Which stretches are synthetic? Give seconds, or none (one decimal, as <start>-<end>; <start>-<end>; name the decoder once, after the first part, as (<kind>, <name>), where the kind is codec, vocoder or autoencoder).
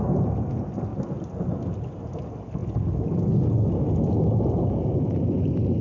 none